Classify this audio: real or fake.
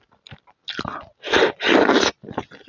real